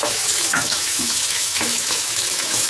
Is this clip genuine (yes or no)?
no